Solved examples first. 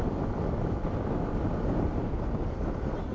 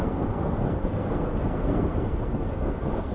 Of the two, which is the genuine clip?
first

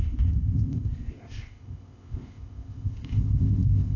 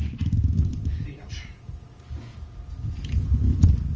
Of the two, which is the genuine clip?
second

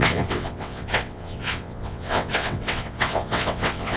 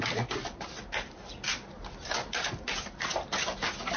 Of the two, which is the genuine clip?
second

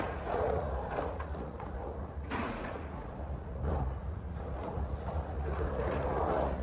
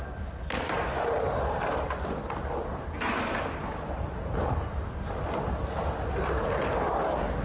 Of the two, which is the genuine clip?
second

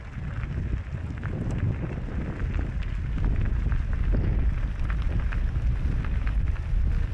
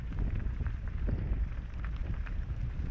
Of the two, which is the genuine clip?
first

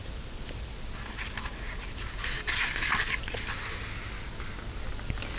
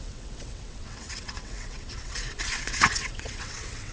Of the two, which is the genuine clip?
first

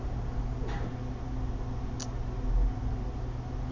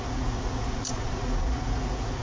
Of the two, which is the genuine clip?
first